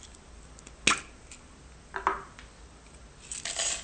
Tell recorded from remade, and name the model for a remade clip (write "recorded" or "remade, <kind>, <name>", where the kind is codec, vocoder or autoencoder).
recorded